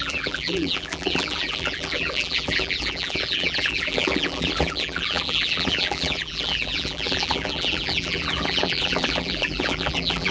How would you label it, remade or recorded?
remade